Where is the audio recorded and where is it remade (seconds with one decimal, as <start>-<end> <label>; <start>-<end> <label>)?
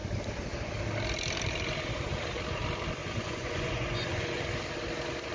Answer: 0.0-3.0 recorded; 3.0-4.4 remade; 4.4-5.3 recorded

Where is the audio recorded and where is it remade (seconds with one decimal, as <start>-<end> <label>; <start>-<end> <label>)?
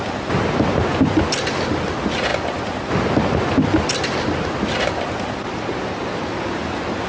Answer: 0.0-7.1 recorded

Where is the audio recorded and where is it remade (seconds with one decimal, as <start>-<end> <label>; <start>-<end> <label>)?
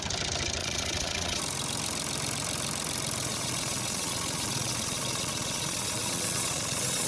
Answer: 0.0-0.6 recorded; 0.6-1.4 remade; 1.4-3.2 recorded; 3.2-7.1 remade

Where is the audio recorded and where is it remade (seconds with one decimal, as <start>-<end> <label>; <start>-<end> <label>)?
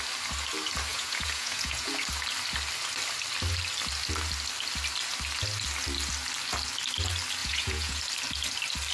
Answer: 0.0-0.9 recorded; 0.9-1.9 remade; 1.9-7.4 recorded; 7.4-8.0 remade; 8.0-8.9 recorded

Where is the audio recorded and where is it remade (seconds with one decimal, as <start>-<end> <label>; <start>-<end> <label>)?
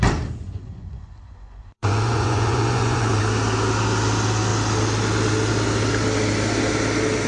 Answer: 0.0-0.4 recorded; 0.4-3.2 remade; 3.2-7.3 recorded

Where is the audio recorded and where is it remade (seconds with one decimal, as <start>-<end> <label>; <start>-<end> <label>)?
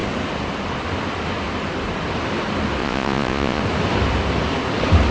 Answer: 0.0-2.8 recorded; 2.8-3.6 remade; 3.6-5.1 recorded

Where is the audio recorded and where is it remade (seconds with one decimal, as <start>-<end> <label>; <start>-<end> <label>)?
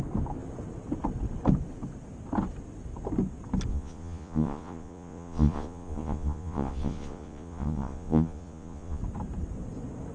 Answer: 0.0-3.7 recorded; 3.7-9.0 remade; 9.0-10.1 recorded